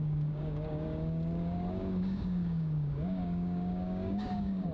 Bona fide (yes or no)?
no